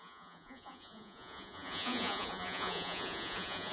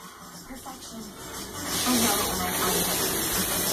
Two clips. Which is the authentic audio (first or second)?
second